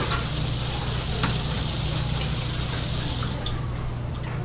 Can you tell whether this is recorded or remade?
recorded